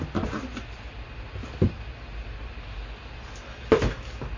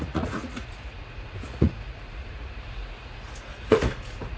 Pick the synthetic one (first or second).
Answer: second